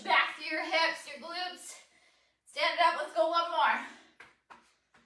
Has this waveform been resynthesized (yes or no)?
no